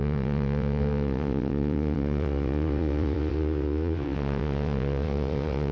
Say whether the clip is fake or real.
fake